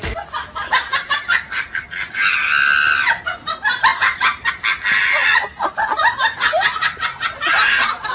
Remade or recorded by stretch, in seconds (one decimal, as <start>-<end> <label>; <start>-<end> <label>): 0.0-3.9 recorded; 3.9-4.5 remade; 4.5-8.1 recorded